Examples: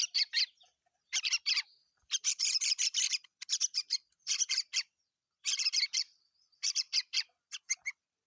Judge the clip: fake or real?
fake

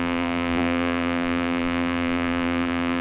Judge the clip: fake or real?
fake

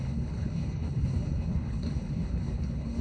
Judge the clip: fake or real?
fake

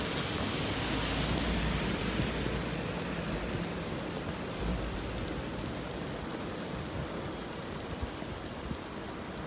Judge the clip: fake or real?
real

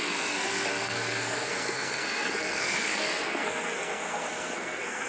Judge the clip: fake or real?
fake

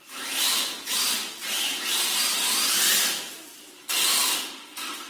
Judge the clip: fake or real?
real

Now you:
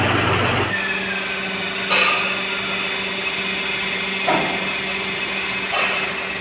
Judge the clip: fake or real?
real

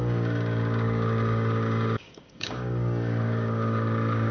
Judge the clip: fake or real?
fake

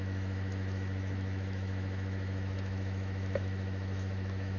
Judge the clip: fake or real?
fake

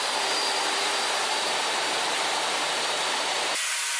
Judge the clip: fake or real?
fake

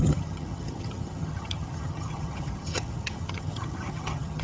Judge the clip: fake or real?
fake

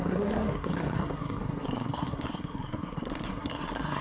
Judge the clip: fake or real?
fake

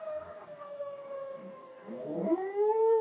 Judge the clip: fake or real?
fake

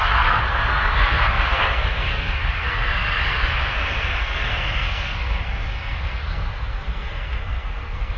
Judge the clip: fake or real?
fake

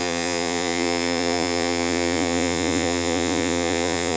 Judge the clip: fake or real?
fake